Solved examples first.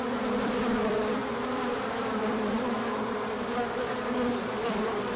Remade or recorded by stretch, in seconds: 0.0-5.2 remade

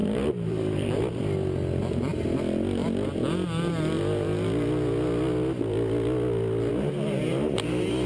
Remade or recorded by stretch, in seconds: 0.0-1.2 remade; 1.2-8.1 recorded

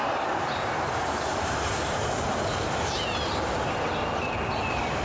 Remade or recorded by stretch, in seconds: 0.0-2.1 remade; 2.1-5.0 recorded

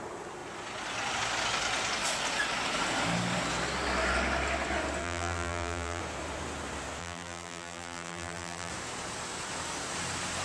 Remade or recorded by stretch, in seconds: 0.0-5.0 recorded; 5.0-6.0 remade; 6.0-7.0 recorded; 7.0-8.7 remade; 8.7-10.4 recorded

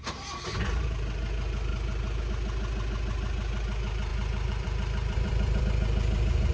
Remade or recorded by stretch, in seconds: 0.0-4.1 recorded; 4.1-5.6 remade; 5.6-6.5 recorded

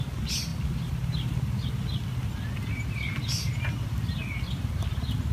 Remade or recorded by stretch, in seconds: 0.0-5.3 recorded

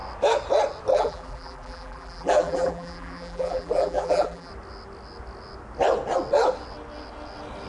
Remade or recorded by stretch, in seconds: 0.0-0.9 recorded; 0.9-4.5 remade; 4.5-7.7 recorded